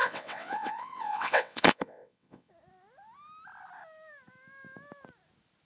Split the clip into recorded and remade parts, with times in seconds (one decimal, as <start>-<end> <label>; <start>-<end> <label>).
0.0-2.5 remade; 2.5-5.6 recorded